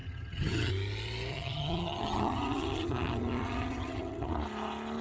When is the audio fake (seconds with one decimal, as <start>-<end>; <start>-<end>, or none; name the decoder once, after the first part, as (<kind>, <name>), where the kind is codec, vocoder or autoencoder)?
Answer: 0.0-0.7 (vocoder, HiFi-GAN); 1.3-4.3